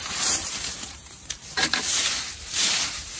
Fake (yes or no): yes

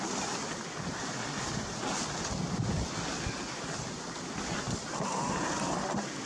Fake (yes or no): no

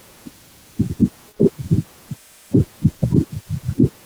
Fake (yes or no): yes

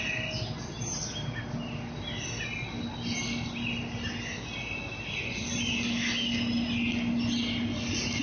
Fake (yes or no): no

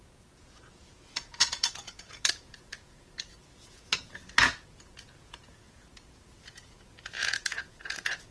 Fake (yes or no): yes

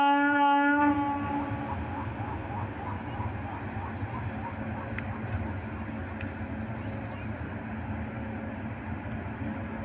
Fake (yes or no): no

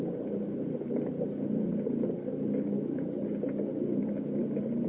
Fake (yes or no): yes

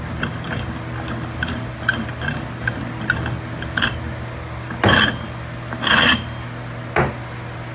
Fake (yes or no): no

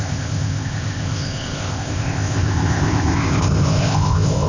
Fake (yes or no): yes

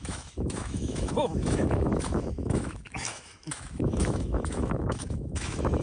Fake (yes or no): yes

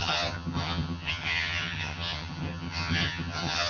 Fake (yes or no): yes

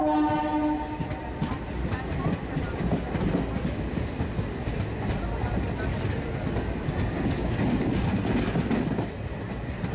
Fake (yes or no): no